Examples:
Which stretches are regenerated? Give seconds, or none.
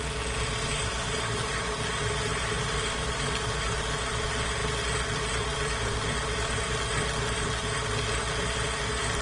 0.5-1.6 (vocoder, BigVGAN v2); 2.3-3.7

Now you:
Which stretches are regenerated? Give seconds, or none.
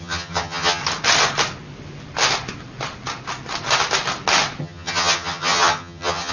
0.0-0.8 (vocoder, HiFi-GAN); 4.6-6.3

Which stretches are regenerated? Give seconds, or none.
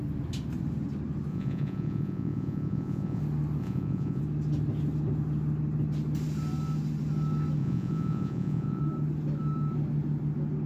1.3-3.2 (vocoder, Vocos); 3.6-4.2; 7.6-8.8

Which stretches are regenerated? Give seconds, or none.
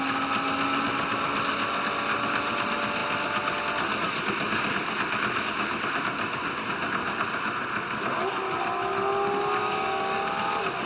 9.6-10.3 (codec, DAC)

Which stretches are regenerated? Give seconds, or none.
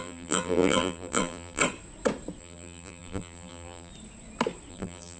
0.0-1.6 (vocoder, BigVGAN v2); 2.4-3.9; 4.7-5.2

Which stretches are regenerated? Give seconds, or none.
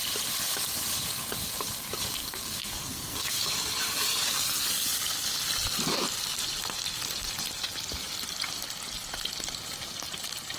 2.2-3.4 (codec, SNAC)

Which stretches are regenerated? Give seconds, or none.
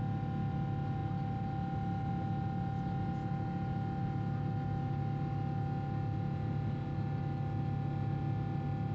none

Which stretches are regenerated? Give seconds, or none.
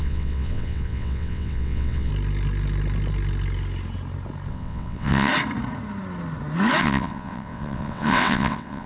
0.0-2.1 (vocoder, WaveNeXt); 4.5-5.3; 6.8-8.9